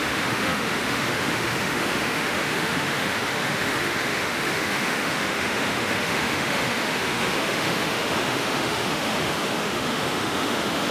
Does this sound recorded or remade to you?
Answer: remade